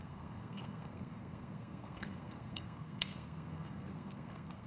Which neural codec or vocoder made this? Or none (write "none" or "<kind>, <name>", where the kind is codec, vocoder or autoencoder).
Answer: codec, SNAC